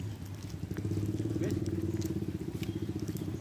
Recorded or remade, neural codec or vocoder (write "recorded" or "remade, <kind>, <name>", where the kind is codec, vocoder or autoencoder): recorded